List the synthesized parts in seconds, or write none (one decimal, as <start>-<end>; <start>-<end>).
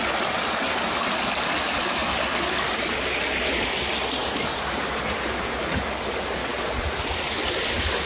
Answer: 2.0-2.7